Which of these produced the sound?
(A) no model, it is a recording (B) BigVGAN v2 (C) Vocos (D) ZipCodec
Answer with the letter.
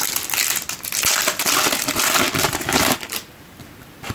A